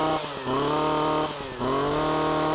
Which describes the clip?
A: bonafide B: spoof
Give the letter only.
A